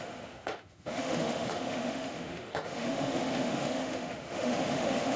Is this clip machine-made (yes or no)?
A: yes